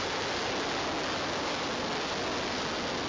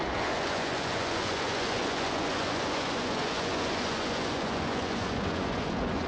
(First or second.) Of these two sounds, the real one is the first